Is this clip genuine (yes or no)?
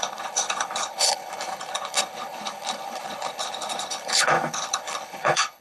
no